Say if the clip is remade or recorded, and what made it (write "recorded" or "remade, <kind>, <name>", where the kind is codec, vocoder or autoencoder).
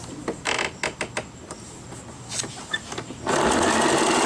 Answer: recorded